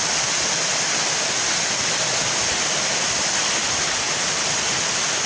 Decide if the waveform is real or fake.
real